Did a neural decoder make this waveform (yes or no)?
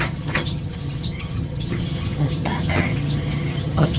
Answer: yes